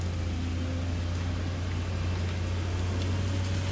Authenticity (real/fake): real